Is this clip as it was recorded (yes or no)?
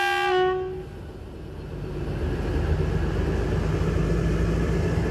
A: yes